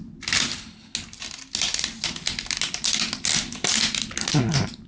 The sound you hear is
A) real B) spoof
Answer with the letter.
A